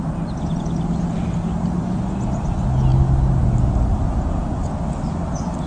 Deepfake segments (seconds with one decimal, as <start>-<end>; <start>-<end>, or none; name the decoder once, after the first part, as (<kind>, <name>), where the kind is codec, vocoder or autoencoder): none